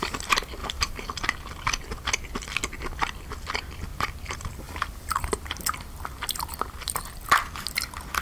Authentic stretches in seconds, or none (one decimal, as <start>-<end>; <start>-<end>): 0.0-0.6; 1.1-3.9; 7.0-8.2